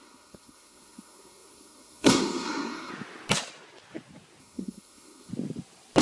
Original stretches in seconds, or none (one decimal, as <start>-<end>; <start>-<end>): 2.9-4.4; 5.3-6.0